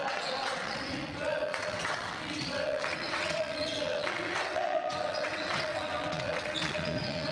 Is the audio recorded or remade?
remade